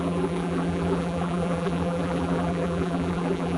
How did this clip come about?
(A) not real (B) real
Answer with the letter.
A